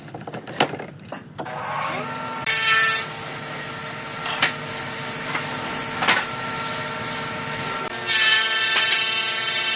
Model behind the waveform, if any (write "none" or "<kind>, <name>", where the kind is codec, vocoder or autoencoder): none